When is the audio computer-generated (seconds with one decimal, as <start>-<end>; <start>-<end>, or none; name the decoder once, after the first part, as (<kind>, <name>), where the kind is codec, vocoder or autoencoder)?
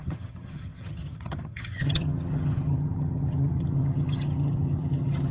0.0-5.3 (vocoder, HiFi-GAN)